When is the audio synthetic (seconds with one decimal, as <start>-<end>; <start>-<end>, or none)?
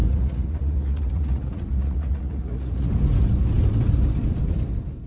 0.0-2.9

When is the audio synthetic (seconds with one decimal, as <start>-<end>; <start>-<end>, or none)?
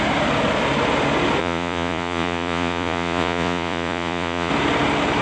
1.4-4.5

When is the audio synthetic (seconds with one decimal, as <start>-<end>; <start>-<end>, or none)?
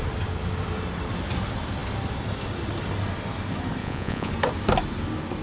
3.8-4.3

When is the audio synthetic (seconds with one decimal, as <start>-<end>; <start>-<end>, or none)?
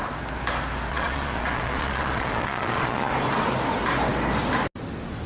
0.9-3.1